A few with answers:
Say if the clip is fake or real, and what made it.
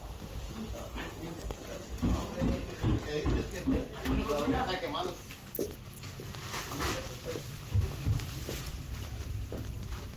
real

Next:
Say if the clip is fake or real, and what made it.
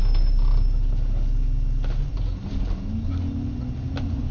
real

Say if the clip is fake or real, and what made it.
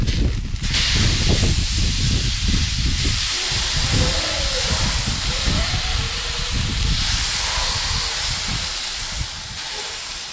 real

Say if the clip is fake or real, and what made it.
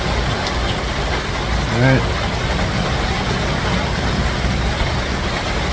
real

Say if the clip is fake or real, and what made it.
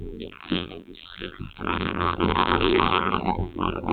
fake, vocoder, BigVGAN v2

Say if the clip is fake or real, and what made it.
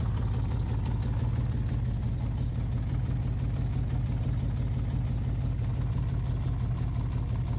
real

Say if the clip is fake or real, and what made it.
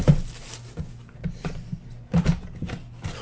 real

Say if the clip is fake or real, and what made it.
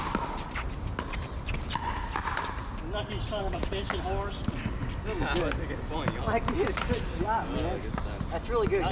real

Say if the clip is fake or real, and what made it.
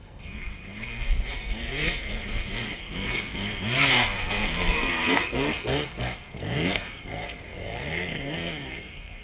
fake, codec, SNAC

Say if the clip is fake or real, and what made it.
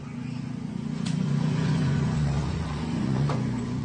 fake, vocoder, Vocos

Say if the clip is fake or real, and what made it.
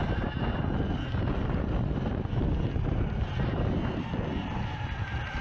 real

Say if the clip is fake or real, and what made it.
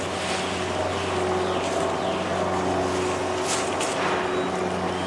real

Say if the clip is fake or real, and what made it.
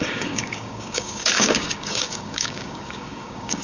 fake, codec, DAC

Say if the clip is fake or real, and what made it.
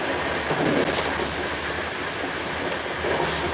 real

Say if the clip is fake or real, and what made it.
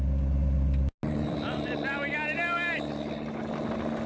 real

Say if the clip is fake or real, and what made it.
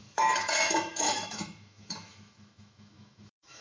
fake, autoencoder, DAC-VAE